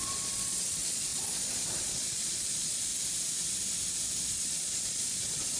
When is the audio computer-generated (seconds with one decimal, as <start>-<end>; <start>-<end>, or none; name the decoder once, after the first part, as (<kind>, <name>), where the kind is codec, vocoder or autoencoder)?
0.0-2.9 (vocoder, Vocos); 4.3-5.6